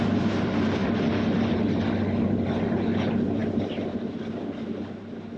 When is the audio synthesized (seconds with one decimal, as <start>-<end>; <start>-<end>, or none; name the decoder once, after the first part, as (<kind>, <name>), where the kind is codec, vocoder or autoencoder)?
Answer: none